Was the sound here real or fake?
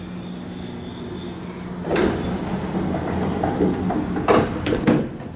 real